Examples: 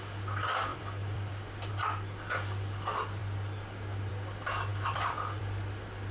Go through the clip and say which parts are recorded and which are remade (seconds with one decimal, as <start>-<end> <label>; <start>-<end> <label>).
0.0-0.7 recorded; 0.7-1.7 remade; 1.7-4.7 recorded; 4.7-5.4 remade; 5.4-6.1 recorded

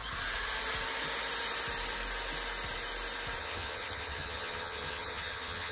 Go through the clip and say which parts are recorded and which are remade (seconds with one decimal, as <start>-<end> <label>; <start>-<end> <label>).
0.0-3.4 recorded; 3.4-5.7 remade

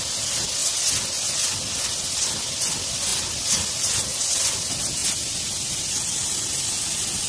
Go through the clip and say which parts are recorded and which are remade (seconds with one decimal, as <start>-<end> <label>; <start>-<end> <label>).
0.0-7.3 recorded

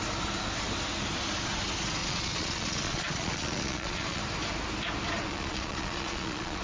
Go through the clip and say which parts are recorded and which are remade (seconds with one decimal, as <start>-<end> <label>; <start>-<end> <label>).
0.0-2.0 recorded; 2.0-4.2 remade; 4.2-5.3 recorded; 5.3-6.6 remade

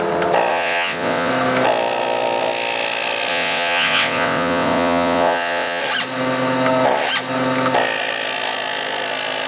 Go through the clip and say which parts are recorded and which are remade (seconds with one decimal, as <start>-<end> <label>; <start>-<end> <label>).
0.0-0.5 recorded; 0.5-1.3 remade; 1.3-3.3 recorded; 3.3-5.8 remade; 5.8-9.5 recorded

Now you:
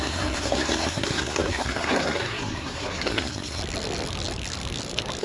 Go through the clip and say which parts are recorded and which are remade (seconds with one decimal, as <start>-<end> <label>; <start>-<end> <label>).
0.0-3.6 remade; 3.6-5.2 recorded

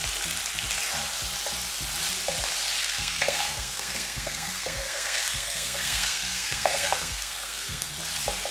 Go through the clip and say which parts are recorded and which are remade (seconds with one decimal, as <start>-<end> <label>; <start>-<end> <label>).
0.0-2.8 recorded; 2.8-7.9 remade; 7.9-8.5 recorded